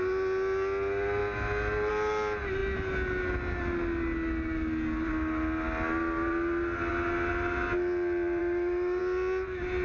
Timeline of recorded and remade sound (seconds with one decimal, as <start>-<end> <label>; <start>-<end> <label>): 0.0-8.4 recorded; 8.4-9.0 remade; 9.0-9.8 recorded